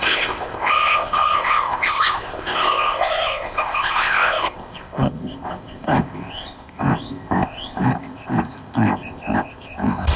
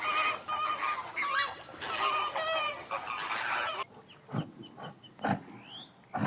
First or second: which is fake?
first